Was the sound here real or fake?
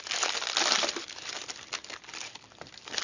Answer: fake